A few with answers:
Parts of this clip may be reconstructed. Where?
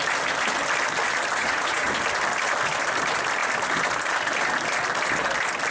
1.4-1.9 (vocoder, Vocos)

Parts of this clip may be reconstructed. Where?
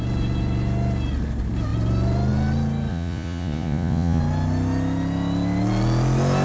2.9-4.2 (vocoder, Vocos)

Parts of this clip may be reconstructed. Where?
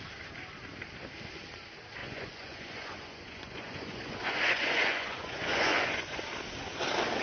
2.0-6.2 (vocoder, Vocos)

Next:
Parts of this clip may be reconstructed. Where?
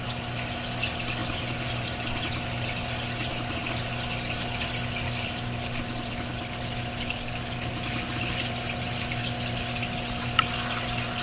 none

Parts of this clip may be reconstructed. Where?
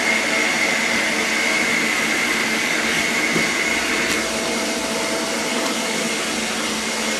2.4-3.0 (codec, DAC); 5.5-6.1